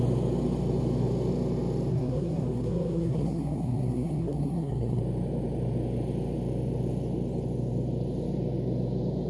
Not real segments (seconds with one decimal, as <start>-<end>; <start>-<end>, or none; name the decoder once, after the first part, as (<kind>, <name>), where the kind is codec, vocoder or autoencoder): 1.9-5.0 (codec, SNAC)